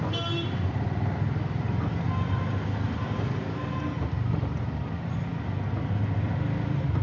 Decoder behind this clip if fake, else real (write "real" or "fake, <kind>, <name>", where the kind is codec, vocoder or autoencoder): real